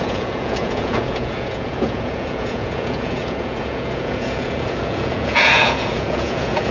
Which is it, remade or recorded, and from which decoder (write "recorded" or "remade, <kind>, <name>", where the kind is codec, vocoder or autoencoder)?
remade, vocoder, Vocos